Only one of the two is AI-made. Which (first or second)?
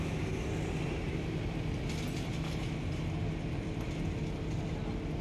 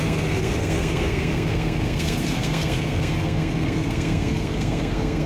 second